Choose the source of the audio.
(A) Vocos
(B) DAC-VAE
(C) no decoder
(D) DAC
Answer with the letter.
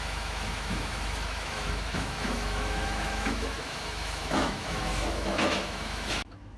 B